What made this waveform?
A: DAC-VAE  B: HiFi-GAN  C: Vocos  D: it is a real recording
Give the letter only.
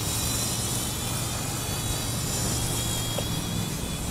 D